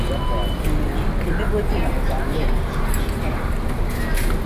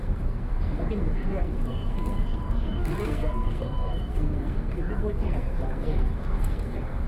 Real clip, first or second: first